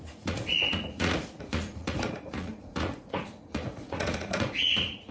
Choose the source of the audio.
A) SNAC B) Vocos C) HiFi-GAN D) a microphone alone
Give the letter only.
B